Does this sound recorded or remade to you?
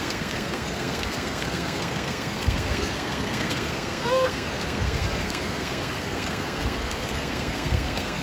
remade